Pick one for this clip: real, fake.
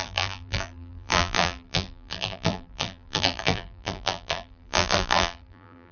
fake